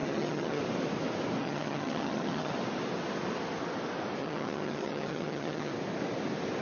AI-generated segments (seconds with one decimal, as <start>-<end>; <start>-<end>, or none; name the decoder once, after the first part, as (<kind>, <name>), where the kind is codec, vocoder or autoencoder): 0.0-0.6 (vocoder, HiFi-GAN); 1.4-2.5; 4.2-5.7